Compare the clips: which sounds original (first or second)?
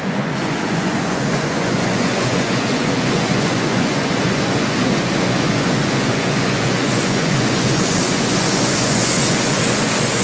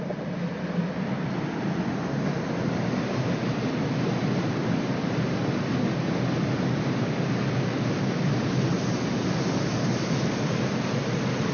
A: second